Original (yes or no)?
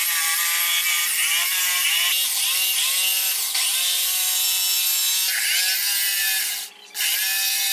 yes